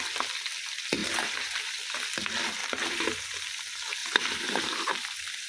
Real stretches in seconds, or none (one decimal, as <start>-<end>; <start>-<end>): 0.0-1.0; 1.8-2.6; 3.4-4.0; 4.9-5.5